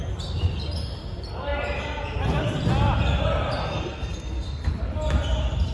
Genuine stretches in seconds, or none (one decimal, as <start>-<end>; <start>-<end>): 0.0-3.6; 4.7-5.7